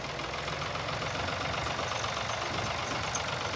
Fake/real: real